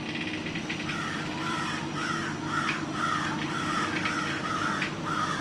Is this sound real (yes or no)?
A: yes